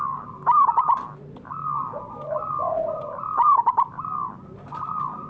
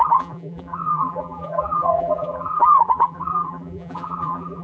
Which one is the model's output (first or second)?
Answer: second